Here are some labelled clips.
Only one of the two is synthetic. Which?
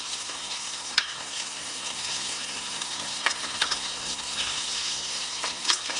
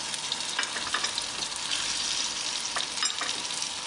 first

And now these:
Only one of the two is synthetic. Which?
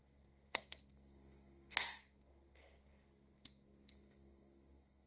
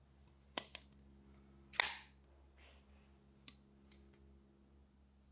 first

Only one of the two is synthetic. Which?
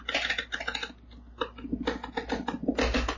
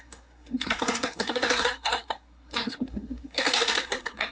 second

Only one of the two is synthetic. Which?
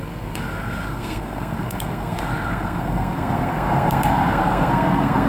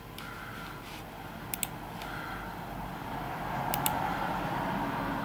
first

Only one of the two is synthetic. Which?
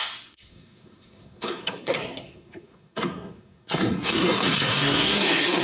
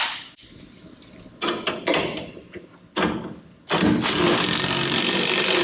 first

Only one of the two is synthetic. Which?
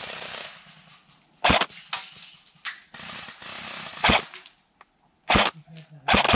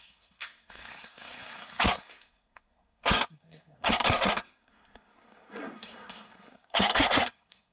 second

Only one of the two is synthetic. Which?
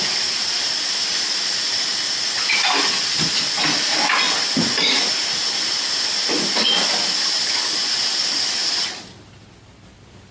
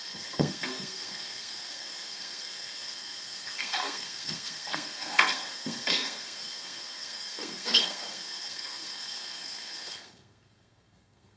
second